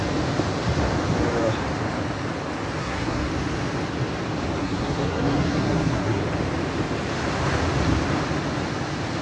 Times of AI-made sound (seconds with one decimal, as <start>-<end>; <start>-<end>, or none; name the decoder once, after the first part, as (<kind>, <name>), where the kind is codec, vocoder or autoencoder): 2.8-3.3 (codec, SNAC); 4.6-6.2